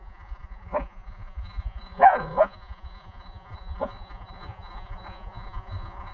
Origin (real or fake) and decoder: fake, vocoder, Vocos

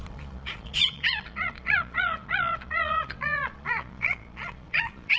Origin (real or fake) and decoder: fake, vocoder, Vocos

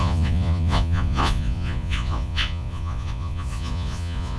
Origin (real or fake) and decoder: fake, vocoder, Vocos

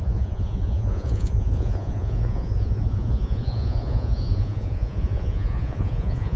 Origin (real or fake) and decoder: fake, vocoder, Vocos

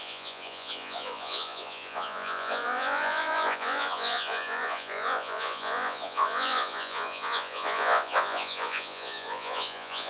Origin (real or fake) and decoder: fake, vocoder, Vocos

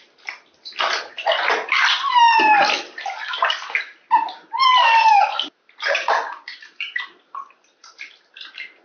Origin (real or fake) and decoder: real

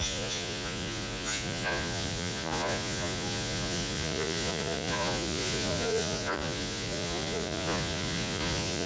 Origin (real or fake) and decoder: fake, vocoder, Vocos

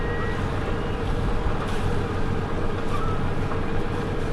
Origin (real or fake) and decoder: real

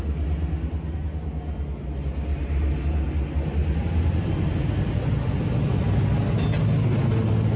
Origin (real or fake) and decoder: real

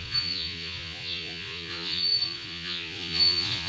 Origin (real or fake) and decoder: fake, vocoder, Vocos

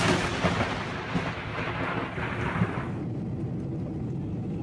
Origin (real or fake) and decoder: real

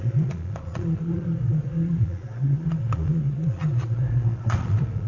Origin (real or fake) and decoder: fake, vocoder, Vocos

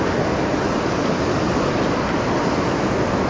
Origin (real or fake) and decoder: real